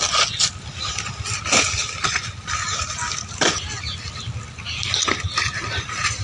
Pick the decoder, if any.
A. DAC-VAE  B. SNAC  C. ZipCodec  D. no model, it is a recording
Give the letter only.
D